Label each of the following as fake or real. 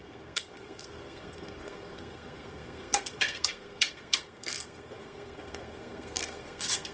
fake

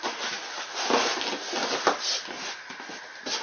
real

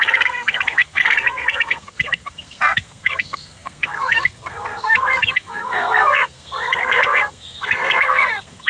fake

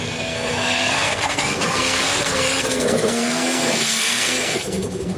fake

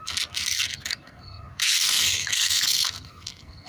fake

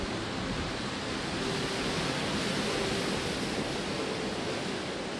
real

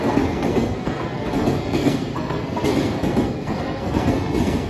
fake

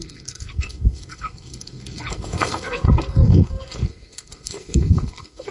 fake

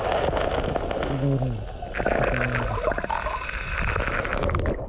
real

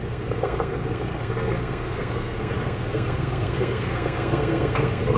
fake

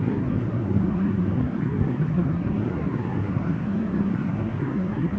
fake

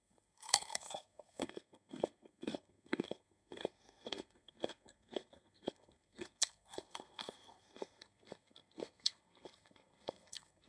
fake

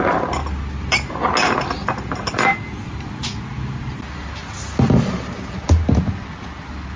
real